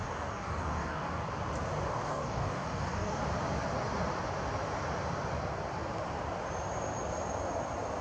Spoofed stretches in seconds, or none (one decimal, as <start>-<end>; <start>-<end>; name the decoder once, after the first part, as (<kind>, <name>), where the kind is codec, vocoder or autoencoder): 0.0-1.2 (codec, DAC); 1.9-3.2